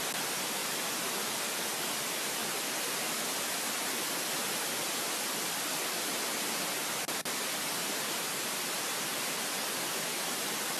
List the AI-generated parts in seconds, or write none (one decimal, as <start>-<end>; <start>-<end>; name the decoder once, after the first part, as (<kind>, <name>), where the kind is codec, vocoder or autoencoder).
none